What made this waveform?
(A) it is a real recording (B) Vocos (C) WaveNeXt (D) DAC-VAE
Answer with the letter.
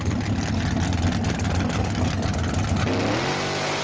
A